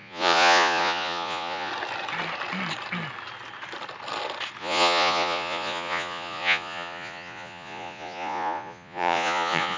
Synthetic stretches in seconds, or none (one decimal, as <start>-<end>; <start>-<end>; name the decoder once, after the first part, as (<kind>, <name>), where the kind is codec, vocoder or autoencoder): 0.0-1.7 (vocoder, Vocos); 4.6-9.8